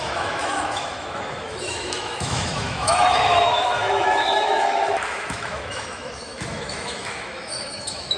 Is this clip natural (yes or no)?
no